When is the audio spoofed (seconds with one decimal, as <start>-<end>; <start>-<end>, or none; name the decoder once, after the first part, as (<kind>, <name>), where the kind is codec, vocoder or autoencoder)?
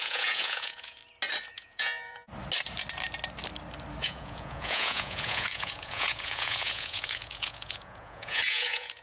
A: 0.0-1.0 (vocoder, Vocos); 1.5-2.3; 4.0-9.0